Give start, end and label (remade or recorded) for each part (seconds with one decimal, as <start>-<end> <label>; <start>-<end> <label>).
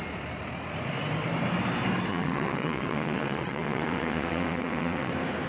0.0-2.1 recorded; 2.1-5.1 remade; 5.1-5.5 recorded